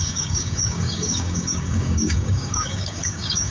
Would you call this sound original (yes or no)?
no